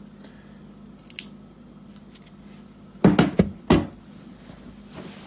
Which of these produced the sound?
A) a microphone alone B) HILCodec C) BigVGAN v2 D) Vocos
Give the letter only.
A